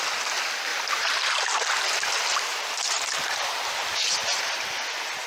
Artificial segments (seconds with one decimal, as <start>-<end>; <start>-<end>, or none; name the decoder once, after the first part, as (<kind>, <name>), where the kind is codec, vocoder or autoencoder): 0.7-1.7 (vocoder, BigVGAN v2); 2.5-3.8